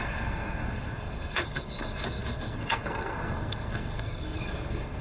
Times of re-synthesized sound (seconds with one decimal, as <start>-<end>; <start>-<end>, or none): 0.0-5.0